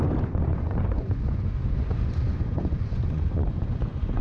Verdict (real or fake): fake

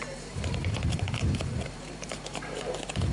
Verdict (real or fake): fake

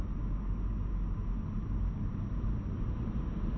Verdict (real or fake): real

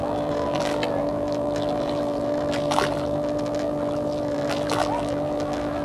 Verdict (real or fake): fake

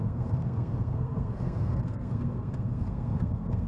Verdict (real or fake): fake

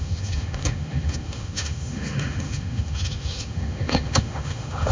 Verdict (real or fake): fake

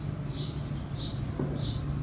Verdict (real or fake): real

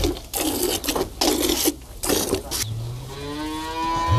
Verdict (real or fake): real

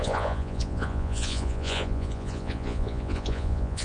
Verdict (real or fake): fake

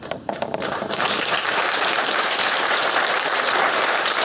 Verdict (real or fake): fake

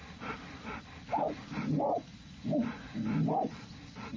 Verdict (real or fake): real